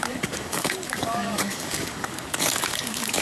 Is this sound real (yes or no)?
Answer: no